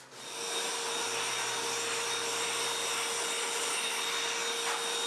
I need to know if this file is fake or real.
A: real